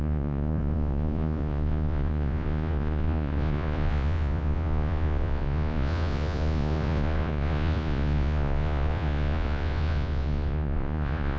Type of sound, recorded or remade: remade